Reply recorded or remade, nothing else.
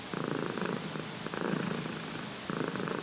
recorded